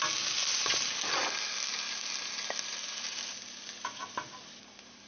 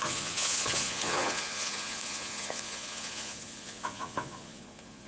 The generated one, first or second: second